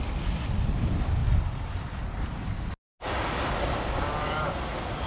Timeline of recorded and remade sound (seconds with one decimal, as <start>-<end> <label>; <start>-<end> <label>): 0.0-5.1 recorded